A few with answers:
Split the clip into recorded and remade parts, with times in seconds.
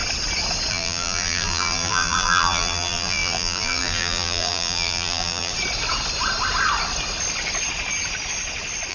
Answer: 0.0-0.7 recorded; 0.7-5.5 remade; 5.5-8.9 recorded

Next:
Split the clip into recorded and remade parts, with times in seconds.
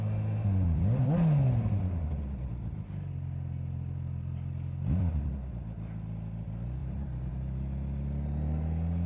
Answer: 0.0-6.8 recorded; 6.8-7.3 remade; 7.3-9.1 recorded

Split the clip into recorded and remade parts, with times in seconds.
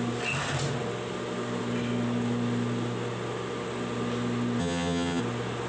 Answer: 0.0-4.6 recorded; 4.6-5.2 remade; 5.2-5.7 recorded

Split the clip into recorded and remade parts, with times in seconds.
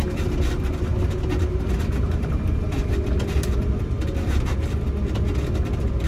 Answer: 0.0-6.1 recorded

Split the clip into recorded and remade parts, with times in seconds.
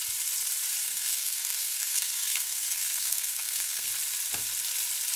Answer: 0.0-0.8 recorded; 0.8-3.9 remade; 3.9-5.2 recorded